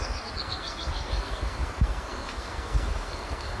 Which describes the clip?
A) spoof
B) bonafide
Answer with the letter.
A